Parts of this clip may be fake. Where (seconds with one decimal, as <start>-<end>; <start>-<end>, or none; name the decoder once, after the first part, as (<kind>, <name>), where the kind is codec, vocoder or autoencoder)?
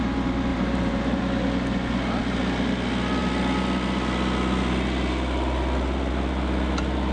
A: 0.5-1.2 (vocoder, BigVGAN v2)